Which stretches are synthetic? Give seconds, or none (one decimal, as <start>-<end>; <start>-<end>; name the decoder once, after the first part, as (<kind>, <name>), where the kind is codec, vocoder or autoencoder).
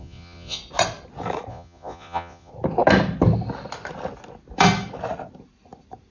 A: 0.0-0.6 (vocoder, Vocos); 1.5-2.5